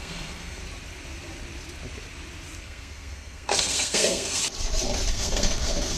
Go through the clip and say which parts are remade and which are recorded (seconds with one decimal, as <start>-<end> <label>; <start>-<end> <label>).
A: 0.0-0.6 remade; 0.6-2.6 recorded; 2.6-4.4 remade; 4.4-5.1 recorded; 5.1-6.0 remade